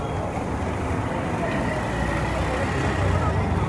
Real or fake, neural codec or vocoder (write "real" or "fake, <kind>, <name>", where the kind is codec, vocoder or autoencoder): real